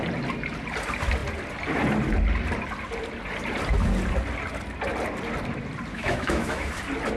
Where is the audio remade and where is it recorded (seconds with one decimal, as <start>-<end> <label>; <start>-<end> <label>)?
0.0-5.9 recorded; 5.9-6.7 remade; 6.7-7.2 recorded